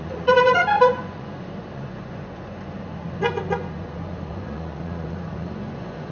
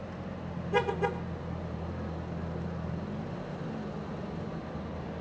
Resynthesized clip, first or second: first